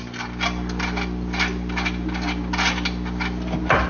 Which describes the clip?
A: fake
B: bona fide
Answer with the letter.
B